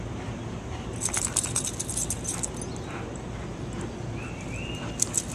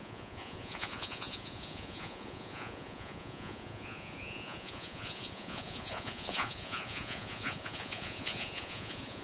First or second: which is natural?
first